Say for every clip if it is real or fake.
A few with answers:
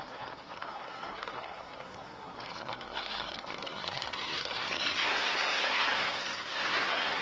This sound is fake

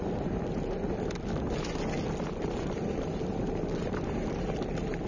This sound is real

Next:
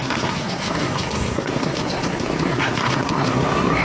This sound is fake